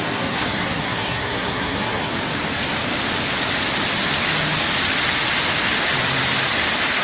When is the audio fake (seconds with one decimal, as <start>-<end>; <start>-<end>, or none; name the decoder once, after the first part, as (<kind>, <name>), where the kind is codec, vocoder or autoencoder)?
0.0-2.1 (codec, SNAC)